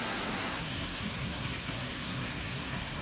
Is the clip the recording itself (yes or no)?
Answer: no